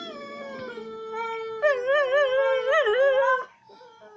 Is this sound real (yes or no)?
yes